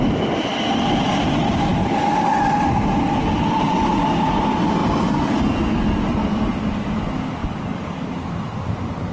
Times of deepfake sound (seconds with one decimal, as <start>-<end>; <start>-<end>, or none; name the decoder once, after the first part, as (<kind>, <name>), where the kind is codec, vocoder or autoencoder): 7.4-8.1 (codec, DAC)